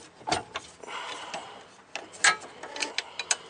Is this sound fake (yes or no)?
no